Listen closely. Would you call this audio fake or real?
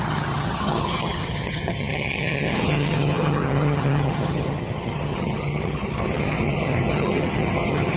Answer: fake